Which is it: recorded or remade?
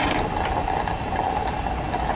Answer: recorded